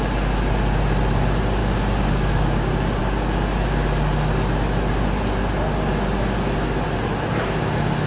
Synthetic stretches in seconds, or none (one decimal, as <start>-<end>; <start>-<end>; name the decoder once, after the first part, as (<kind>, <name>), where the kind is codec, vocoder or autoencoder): 1.6-2.6 (codec, DAC)